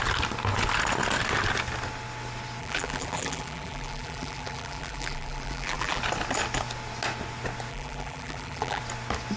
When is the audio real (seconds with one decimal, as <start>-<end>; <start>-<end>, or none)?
0.0-2.6; 6.0-7.7; 8.8-9.4